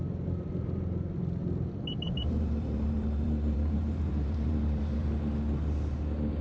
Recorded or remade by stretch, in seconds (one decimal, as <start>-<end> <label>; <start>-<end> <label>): 0.0-1.4 recorded; 1.4-5.2 remade; 5.2-6.4 recorded